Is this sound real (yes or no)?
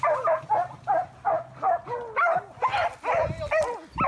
yes